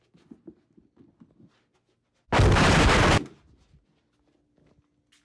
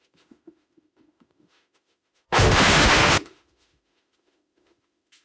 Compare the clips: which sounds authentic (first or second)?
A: first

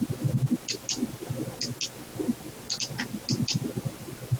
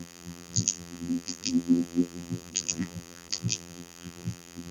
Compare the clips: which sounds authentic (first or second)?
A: first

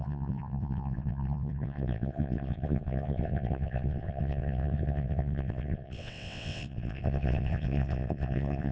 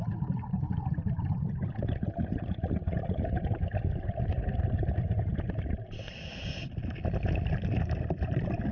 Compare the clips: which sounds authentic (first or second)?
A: second